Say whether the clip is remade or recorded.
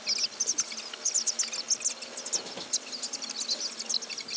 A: recorded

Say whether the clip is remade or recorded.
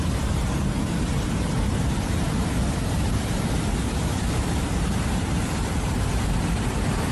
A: remade